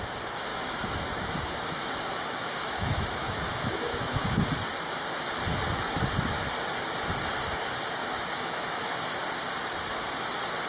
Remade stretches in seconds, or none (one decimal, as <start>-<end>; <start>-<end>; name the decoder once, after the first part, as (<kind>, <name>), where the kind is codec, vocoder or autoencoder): 0.5-4.4 (autoencoder, DAC-VAE); 8.0-9.2